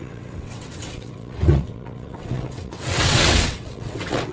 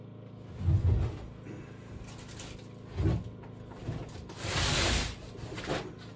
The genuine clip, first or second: second